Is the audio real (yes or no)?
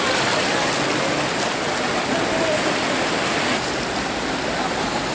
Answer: yes